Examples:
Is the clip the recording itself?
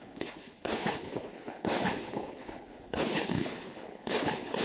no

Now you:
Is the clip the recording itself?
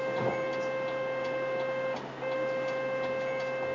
yes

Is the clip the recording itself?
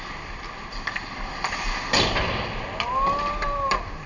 yes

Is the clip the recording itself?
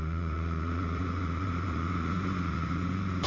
no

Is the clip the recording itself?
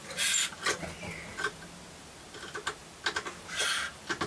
yes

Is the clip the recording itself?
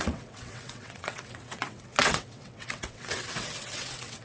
no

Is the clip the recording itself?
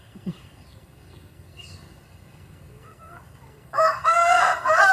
no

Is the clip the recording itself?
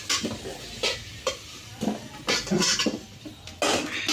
yes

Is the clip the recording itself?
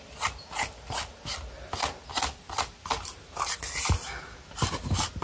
yes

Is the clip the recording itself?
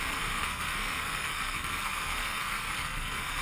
no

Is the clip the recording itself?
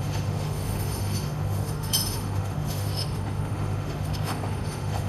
no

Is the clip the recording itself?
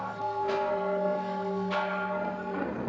no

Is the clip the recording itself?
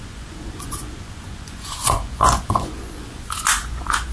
no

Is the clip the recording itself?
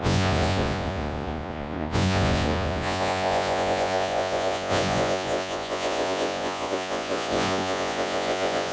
no